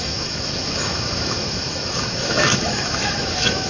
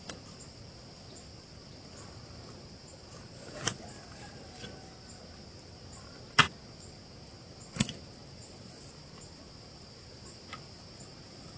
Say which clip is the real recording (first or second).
second